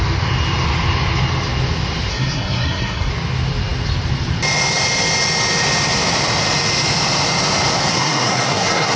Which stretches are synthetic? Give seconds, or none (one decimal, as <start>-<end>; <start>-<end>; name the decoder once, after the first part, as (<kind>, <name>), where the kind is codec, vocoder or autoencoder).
2.1-3.1 (codec, SNAC); 7.9-9.0